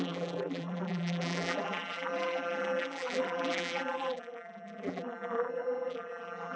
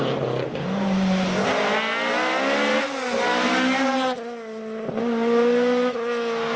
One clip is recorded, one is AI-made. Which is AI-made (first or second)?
first